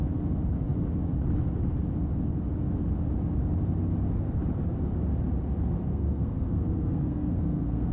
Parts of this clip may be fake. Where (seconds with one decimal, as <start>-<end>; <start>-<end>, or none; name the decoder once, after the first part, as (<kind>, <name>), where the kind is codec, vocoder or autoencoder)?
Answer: 5.9-7.9 (codec, SNAC)